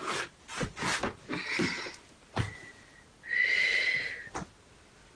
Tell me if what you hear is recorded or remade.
recorded